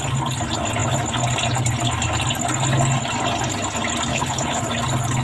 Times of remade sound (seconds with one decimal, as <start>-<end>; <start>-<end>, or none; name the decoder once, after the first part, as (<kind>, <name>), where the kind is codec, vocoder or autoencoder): 4.1-4.6 (codec, HILCodec)